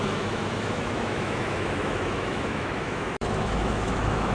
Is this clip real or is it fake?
fake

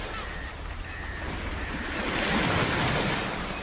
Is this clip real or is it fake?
real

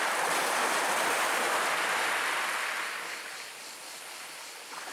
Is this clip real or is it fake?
real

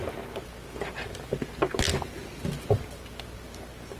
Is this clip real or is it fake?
real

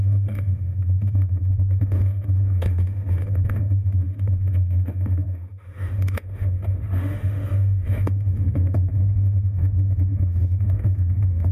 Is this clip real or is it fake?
fake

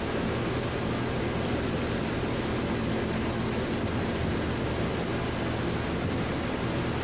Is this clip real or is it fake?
real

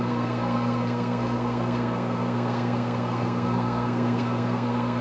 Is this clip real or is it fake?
fake